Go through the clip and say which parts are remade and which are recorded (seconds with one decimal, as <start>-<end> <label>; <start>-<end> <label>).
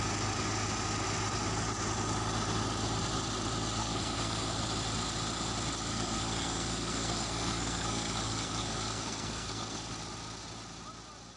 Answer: 0.0-3.8 recorded; 3.8-4.6 remade; 4.6-5.9 recorded; 5.9-9.9 remade; 9.9-11.4 recorded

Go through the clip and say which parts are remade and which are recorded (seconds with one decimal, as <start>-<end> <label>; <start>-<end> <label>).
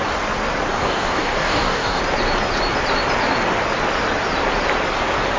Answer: 0.0-0.7 recorded; 0.7-2.0 remade; 2.0-5.4 recorded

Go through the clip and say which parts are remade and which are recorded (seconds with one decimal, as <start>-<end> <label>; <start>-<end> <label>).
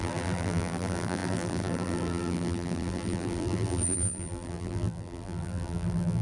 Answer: 0.0-6.2 remade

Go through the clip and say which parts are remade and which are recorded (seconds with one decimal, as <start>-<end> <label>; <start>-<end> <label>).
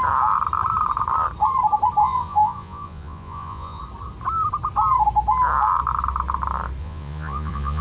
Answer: 0.0-2.0 recorded; 2.0-3.8 remade; 3.8-6.8 recorded; 6.8-7.8 remade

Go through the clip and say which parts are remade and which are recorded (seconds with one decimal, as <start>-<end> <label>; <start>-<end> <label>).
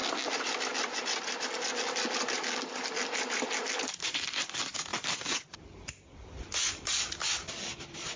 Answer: 0.0-8.2 recorded